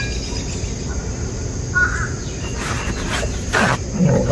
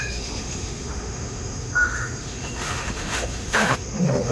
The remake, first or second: second